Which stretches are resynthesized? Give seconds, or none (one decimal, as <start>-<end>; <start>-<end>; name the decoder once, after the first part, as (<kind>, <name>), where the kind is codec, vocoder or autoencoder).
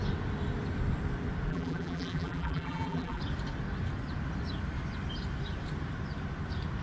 1.5-3.2 (vocoder, BigVGAN v2)